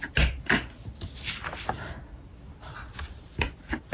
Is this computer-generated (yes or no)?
no